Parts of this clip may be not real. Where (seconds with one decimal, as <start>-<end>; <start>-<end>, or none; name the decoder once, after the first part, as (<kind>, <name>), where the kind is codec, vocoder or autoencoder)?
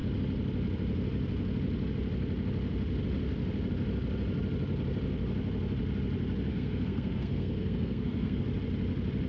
6.5-8.4 (codec, SNAC)